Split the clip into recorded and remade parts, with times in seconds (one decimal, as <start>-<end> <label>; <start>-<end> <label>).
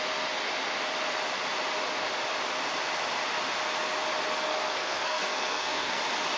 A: 0.0-4.5 recorded; 4.5-6.0 remade; 6.0-6.4 recorded